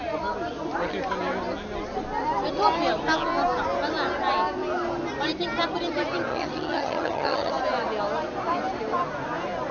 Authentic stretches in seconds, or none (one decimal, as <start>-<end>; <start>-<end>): 0.0-6.3; 7.5-9.7